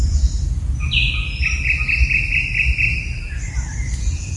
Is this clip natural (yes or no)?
no